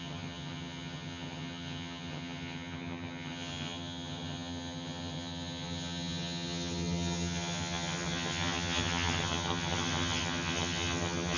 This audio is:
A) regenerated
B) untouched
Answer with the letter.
A